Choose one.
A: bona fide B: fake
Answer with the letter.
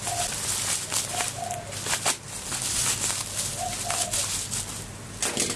A